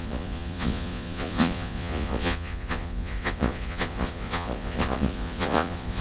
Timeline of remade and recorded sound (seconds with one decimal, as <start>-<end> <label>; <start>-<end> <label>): 0.0-6.0 remade